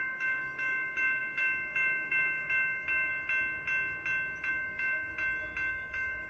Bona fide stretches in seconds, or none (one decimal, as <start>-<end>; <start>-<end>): 3.1-4.5; 5.1-5.7

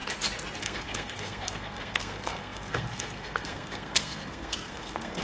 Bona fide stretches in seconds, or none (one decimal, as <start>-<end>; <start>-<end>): 0.0-0.6

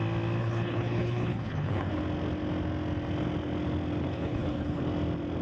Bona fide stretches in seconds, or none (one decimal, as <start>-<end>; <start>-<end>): 0.0-0.4; 1.9-4.1; 4.8-5.4

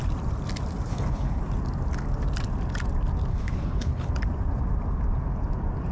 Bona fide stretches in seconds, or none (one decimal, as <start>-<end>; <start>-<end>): 0.0-0.9; 1.4-3.3; 4.1-5.9

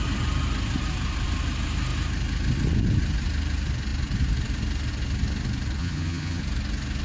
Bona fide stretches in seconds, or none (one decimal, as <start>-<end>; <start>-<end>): 0.0-5.8; 6.4-7.0

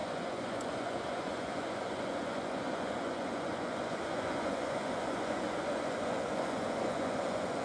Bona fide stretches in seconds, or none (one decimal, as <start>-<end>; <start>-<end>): none

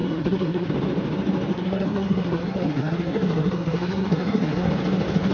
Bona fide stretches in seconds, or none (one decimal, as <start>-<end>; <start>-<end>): 0.7-1.5; 4.7-5.3

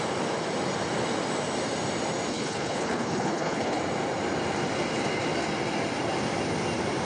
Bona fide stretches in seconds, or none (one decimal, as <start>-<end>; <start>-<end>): 0.0-2.3; 3.8-7.1